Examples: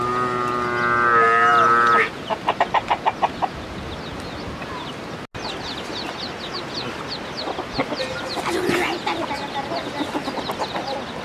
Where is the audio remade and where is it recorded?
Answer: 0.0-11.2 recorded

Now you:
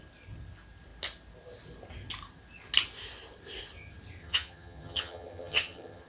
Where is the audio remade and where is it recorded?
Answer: 0.0-4.2 recorded; 4.2-6.1 remade

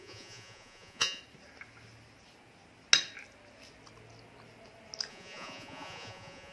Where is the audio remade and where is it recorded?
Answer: 0.0-1.2 remade; 1.2-5.1 recorded; 5.1-6.5 remade